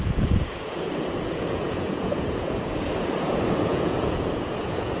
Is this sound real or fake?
fake